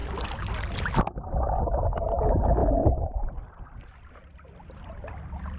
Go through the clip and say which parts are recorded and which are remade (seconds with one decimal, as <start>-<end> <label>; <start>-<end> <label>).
0.0-2.6 recorded; 2.6-3.4 remade; 3.4-4.3 recorded; 4.3-5.0 remade; 5.0-5.6 recorded